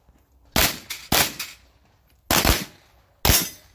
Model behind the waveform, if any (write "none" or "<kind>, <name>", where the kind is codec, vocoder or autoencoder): none